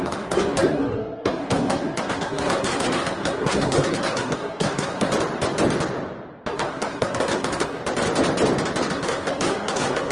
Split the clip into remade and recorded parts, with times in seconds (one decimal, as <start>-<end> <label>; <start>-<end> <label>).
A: 0.0-5.1 remade; 5.1-6.5 recorded; 6.5-7.8 remade; 7.8-8.9 recorded; 8.9-10.1 remade